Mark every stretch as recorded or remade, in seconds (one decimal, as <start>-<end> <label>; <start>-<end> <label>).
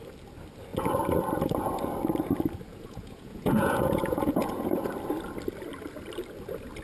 0.0-2.7 recorded; 2.7-4.9 remade; 4.9-6.8 recorded